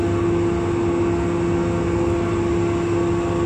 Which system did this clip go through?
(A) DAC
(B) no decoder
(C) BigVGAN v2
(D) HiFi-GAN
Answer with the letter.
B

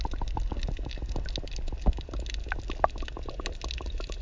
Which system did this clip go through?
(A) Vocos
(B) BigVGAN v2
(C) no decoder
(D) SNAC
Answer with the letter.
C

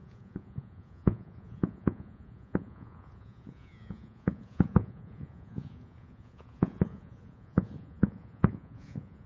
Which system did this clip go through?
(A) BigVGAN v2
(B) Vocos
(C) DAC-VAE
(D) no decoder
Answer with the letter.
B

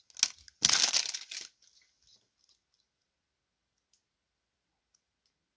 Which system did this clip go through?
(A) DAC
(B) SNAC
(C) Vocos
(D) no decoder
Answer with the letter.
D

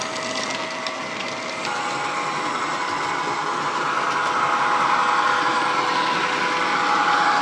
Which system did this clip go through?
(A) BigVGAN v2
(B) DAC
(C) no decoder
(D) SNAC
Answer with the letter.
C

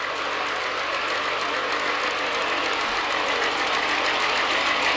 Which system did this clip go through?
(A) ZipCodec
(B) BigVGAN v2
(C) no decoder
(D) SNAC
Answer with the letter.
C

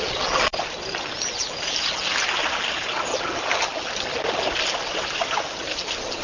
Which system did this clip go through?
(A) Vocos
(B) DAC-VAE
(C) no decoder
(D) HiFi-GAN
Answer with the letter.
C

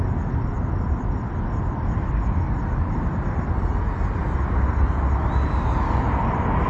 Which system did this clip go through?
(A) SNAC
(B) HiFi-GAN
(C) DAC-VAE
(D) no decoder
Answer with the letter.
D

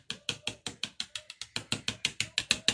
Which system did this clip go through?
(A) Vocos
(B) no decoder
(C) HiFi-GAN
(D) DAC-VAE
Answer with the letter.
B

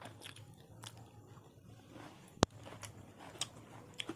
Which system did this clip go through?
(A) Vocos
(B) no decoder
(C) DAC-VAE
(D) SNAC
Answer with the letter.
B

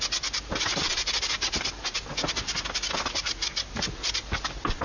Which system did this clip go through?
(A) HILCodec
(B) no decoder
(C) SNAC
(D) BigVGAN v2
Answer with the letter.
B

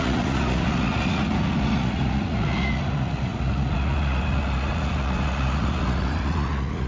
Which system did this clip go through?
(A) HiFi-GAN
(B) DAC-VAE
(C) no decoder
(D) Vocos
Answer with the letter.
D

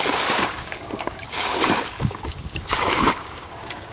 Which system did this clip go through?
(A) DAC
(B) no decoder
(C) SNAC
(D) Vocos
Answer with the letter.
A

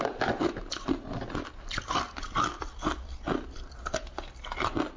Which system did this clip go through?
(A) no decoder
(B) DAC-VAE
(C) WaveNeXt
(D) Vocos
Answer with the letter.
A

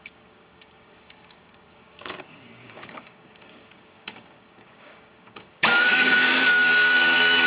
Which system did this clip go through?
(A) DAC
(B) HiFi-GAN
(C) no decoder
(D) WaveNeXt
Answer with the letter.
A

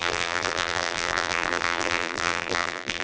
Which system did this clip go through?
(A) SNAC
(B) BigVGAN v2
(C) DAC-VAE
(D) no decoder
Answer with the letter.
B